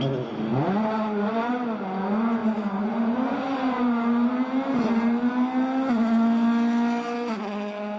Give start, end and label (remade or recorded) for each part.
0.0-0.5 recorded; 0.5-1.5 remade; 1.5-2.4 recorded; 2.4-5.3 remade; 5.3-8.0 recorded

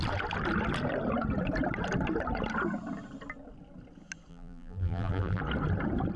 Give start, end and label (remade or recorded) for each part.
0.0-4.3 recorded; 4.3-5.4 remade; 5.4-6.2 recorded

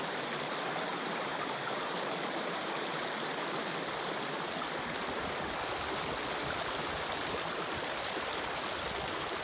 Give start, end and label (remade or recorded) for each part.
0.0-0.9 recorded; 0.9-3.0 remade; 3.0-9.4 recorded

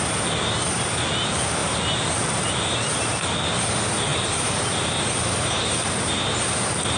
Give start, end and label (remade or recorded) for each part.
0.0-1.6 recorded; 1.6-2.5 remade; 2.5-7.0 recorded

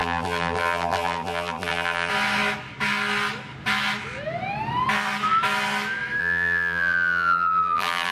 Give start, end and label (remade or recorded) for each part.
0.0-2.1 remade; 2.1-6.2 recorded; 6.2-8.1 remade

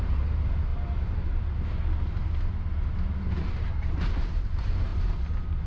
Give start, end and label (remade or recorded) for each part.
0.0-0.7 remade; 0.7-3.7 recorded; 3.7-5.7 remade

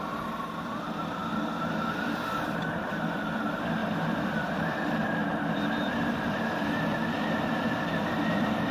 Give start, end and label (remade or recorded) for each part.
0.0-3.8 recorded; 3.8-6.4 remade; 6.4-8.7 recorded

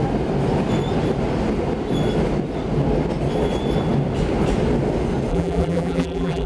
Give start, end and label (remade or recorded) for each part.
0.0-5.3 recorded; 5.3-6.5 remade